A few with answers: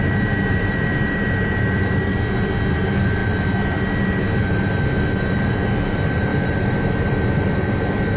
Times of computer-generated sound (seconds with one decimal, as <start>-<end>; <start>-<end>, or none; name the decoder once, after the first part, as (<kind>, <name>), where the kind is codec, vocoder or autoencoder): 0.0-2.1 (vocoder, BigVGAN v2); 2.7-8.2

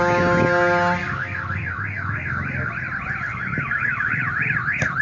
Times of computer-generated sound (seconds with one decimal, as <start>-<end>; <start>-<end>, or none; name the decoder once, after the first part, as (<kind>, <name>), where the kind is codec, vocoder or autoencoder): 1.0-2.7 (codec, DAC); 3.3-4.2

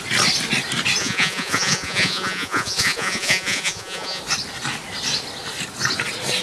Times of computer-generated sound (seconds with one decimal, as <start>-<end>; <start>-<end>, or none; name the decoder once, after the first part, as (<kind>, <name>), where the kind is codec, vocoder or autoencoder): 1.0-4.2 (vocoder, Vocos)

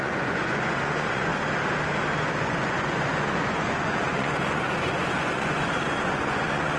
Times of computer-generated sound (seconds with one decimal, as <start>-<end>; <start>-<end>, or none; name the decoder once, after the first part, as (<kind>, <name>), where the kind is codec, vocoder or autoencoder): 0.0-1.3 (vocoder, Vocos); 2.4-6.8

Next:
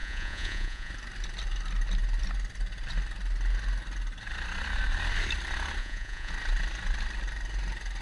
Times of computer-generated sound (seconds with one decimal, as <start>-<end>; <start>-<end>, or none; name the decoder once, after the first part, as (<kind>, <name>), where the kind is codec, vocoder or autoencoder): 0.0-0.9 (vocoder, Vocos); 5.8-6.3

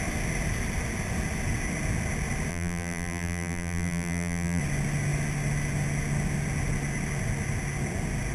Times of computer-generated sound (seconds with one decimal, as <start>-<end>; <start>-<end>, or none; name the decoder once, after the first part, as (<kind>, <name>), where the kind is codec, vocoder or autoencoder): 2.5-4.6 (vocoder, BigVGAN v2)

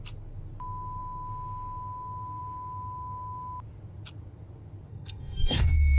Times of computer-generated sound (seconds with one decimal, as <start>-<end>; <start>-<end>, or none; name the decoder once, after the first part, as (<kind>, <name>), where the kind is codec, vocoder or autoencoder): 4.9-6.0 (codec, SNAC)

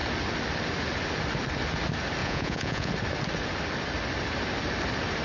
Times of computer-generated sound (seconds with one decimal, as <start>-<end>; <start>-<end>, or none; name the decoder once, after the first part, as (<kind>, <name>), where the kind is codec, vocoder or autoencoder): 2.2-2.9 (vocoder, Vocos)